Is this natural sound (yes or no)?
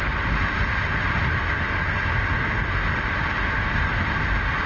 yes